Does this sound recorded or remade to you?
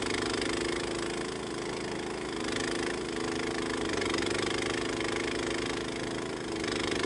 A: recorded